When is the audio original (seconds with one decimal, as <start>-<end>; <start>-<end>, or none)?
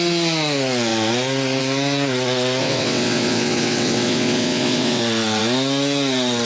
0.0-2.6; 5.0-6.5